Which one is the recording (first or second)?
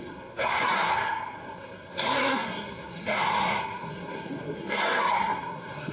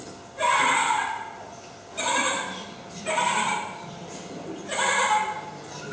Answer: second